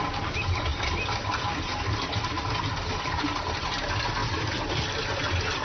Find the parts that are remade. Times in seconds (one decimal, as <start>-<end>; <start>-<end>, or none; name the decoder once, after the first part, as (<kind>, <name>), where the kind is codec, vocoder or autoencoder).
none